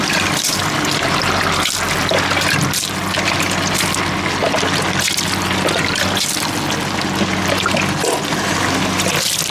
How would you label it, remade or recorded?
recorded